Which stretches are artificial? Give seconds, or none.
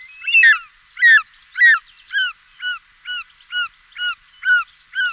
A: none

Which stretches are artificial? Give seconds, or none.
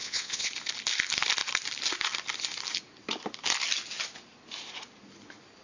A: 0.0-0.5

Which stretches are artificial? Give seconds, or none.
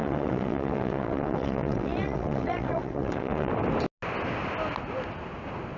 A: 0.0-3.5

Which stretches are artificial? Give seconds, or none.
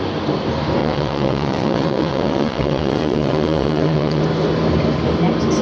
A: 0.8-4.2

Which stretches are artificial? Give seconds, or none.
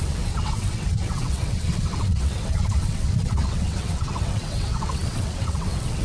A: 0.0-6.0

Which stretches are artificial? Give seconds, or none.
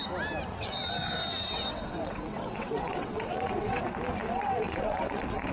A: 0.5-3.8; 4.2-5.5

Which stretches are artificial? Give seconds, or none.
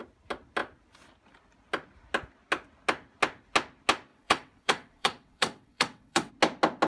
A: 4.1-6.3